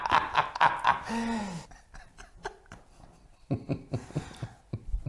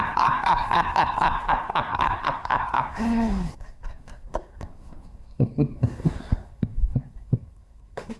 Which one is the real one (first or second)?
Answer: first